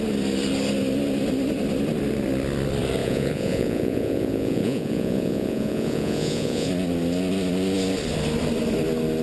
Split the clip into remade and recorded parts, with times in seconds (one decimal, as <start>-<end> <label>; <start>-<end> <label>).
0.0-3.0 recorded; 3.0-6.7 remade; 6.7-9.2 recorded